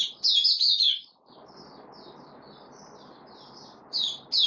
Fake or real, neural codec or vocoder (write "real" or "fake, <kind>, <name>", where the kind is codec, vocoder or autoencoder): real